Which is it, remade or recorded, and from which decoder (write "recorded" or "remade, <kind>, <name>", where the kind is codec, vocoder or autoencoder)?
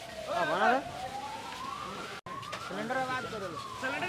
recorded